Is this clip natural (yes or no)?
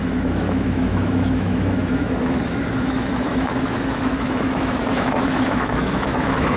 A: no